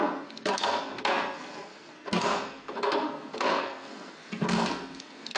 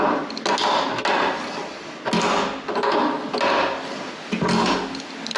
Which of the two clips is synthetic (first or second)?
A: first